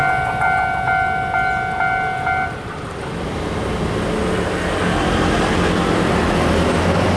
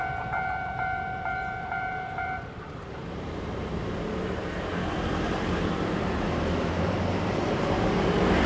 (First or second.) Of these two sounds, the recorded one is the first